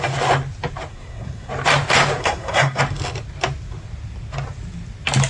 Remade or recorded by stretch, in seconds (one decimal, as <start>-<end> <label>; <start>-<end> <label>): 0.0-0.9 recorded; 0.9-1.5 remade; 1.5-2.2 recorded; 2.2-2.8 remade; 2.8-5.3 recorded